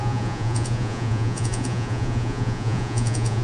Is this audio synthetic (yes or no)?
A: yes